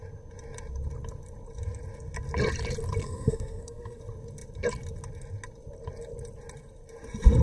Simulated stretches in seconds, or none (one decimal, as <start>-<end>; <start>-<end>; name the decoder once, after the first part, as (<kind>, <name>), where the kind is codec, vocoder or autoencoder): 3.0-4.0 (codec, SNAC)